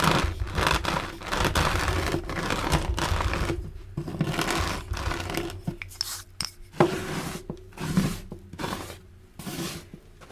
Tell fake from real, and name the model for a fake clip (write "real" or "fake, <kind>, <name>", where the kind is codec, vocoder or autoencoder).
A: real